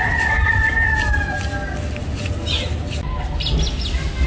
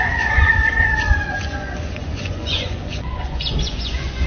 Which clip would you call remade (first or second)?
second